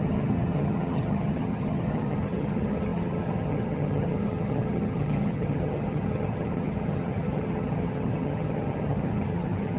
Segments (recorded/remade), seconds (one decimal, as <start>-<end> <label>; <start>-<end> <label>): 0.0-9.8 remade